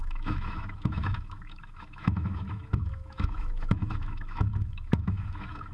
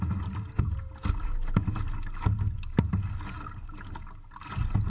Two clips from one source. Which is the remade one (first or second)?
first